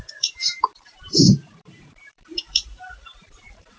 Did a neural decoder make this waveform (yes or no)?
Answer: yes